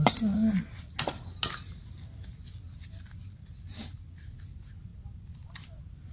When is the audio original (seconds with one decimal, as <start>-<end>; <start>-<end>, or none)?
0.0-4.9